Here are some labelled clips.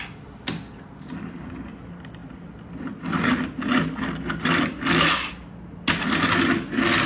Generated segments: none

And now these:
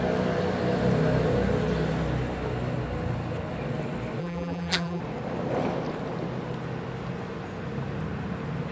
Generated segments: 4.2-5.0 (vocoder, BigVGAN v2)

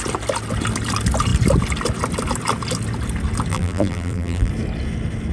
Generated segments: 3.5-4.5 (vocoder, BigVGAN v2)

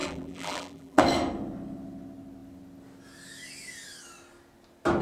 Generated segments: 0.0-1.0 (vocoder, BigVGAN v2)

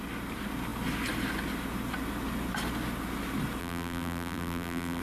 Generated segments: 3.6-5.0 (vocoder, BigVGAN v2)